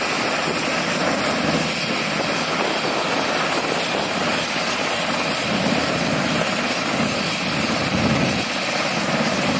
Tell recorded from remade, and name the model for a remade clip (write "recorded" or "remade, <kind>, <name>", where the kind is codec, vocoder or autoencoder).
recorded